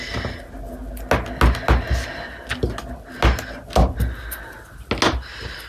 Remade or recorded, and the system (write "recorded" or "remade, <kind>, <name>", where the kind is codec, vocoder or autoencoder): recorded